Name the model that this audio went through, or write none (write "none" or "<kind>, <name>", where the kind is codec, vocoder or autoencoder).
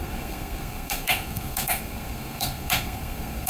codec, SNAC